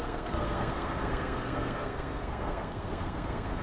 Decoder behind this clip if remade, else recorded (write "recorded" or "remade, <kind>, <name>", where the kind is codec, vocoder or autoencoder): remade, codec, SNAC